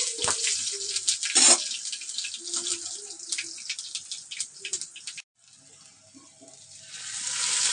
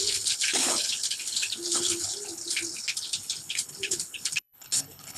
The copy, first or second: second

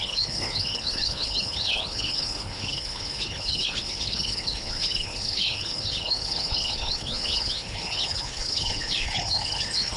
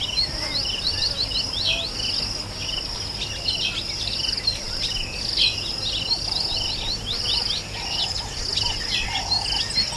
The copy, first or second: first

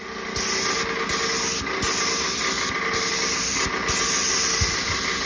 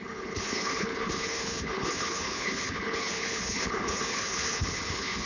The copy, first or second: second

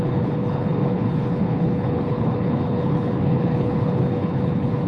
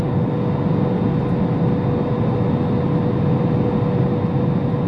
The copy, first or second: first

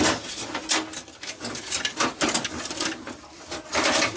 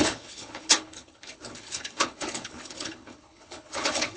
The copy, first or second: second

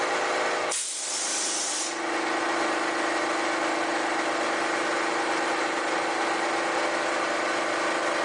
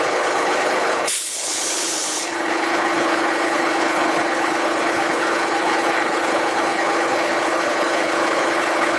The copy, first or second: second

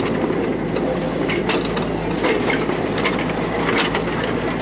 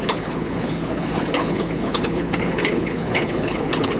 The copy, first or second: second